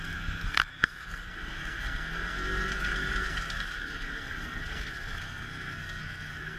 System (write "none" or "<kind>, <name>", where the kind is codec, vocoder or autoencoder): codec, SNAC